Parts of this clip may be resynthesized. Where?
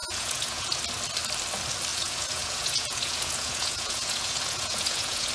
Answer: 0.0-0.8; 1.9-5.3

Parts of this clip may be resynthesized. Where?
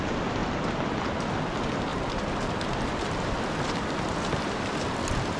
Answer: 1.9-5.4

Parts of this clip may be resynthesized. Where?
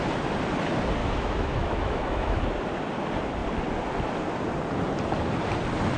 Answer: 1.0-2.4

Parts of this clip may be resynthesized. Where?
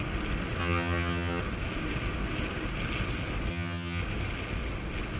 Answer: 0.6-1.4; 3.5-4.0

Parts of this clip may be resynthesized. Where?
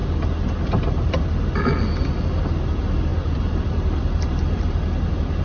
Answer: 3.1-5.4